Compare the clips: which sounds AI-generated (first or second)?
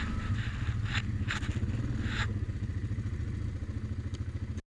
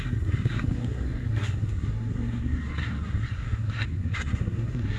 second